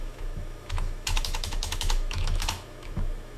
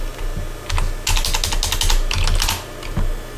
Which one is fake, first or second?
first